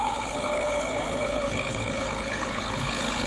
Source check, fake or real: fake